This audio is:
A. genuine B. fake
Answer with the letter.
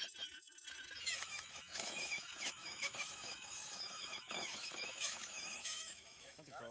B